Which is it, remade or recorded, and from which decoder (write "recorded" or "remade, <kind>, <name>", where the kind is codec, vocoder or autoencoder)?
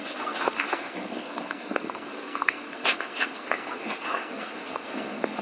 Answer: remade, codec, SNAC